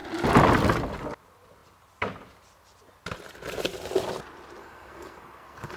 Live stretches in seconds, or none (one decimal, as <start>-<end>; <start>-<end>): 0.0-4.6